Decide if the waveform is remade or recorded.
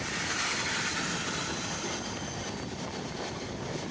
recorded